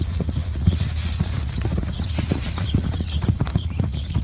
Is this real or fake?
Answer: fake